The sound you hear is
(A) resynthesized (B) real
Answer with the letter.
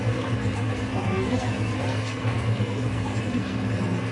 A